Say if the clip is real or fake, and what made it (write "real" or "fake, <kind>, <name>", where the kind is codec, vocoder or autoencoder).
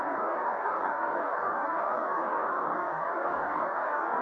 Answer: fake, codec, DAC